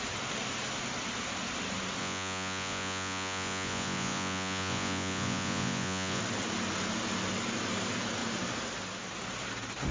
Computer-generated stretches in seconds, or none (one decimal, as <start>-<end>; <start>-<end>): 2.0-6.2